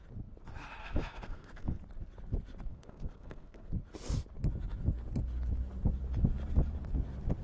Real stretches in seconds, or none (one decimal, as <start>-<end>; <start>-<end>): 0.0-0.8; 1.8-2.7; 3.7-7.4